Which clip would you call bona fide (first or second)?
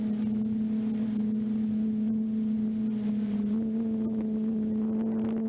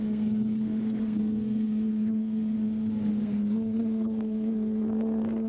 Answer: first